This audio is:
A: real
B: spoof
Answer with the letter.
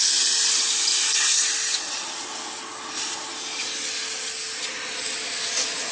A